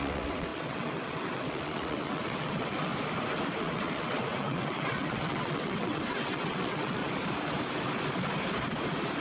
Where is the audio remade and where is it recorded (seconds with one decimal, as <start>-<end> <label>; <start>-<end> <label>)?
0.0-2.9 remade; 2.9-3.6 recorded; 3.6-7.0 remade; 7.0-9.2 recorded